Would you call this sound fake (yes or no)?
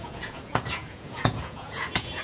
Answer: yes